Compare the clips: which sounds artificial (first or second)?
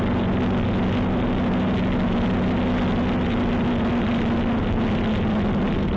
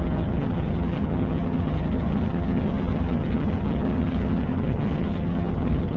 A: second